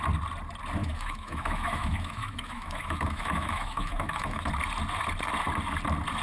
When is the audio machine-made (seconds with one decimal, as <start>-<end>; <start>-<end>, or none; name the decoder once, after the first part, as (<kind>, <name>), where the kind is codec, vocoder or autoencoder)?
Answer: 0.8-4.5 (autoencoder, DAC-VAE)